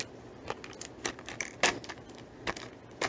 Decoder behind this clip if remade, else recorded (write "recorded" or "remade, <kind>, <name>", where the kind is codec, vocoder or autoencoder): recorded